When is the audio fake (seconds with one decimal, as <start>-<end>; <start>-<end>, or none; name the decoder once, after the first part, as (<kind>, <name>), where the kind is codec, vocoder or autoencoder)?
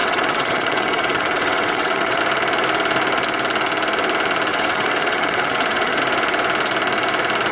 0.0-2.2 (vocoder, WaveNeXt); 4.5-6.0